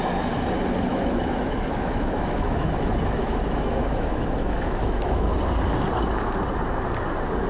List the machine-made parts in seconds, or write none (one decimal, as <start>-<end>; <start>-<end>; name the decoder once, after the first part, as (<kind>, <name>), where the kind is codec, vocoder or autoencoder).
0.9-5.4 (autoencoder, DAC-VAE)